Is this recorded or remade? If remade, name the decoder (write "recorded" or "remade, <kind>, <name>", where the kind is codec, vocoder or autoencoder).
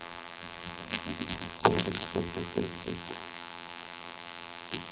remade, vocoder, BigVGAN v2